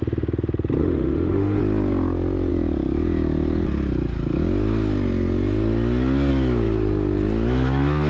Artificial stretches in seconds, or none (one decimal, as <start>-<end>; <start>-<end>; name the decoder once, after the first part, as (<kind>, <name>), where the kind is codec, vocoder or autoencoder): 0.8-1.6 (autoencoder, DAC-VAE)